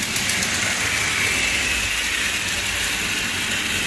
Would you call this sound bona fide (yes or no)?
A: yes